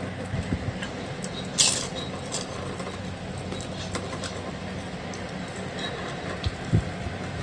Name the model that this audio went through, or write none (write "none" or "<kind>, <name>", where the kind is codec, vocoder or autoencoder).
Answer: none